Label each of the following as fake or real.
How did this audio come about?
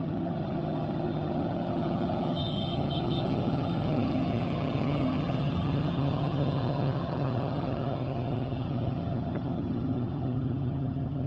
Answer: fake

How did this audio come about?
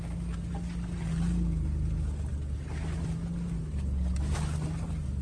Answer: real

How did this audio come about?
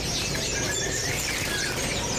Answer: fake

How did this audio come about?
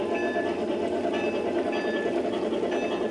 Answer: real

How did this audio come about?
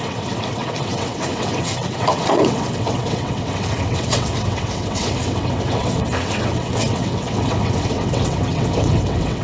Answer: fake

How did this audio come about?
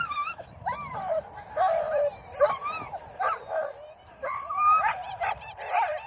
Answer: fake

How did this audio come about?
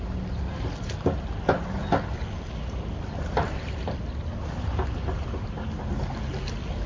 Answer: real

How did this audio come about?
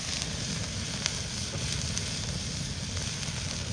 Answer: real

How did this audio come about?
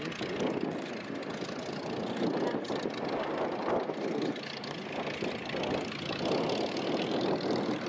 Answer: real